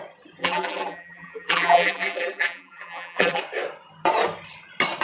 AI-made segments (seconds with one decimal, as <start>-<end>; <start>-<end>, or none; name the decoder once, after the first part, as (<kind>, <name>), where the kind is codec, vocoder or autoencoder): 0.4-3.4 (vocoder, BigVGAN v2)